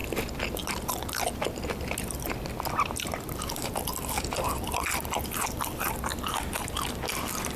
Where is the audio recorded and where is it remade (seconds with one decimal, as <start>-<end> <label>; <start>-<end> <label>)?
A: 0.0-3.6 recorded; 3.6-7.6 remade